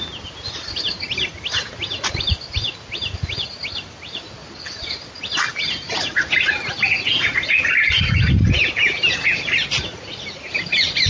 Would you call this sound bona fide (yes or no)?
yes